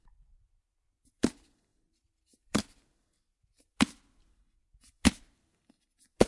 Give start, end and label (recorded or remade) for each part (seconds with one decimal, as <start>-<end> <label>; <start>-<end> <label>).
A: 0.0-1.7 recorded; 1.7-2.6 remade; 2.6-6.3 recorded